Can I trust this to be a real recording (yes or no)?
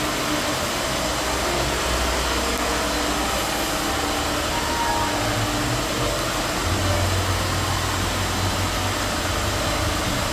yes